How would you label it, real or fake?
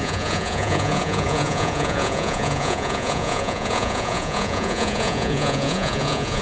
fake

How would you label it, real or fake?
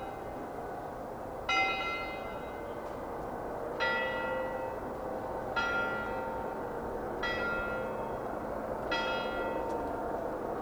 real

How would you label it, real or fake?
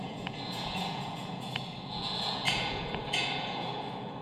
fake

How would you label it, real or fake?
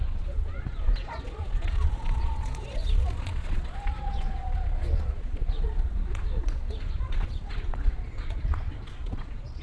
fake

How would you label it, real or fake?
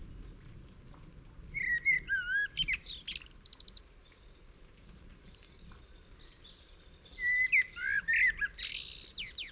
real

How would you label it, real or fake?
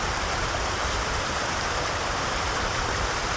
real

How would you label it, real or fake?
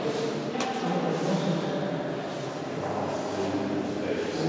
real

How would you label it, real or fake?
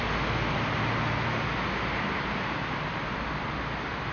real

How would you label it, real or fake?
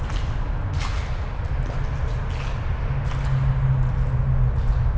real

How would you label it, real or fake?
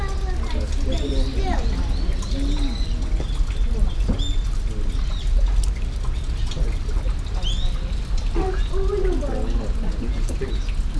real